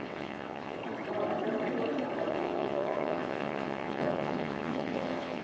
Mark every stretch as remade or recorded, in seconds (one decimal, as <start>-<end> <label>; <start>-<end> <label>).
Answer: 0.0-0.8 remade; 0.8-2.3 recorded; 2.3-5.4 remade